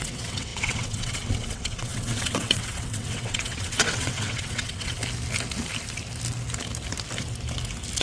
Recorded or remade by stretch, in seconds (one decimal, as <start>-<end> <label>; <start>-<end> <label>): 0.0-5.0 remade; 5.0-8.0 recorded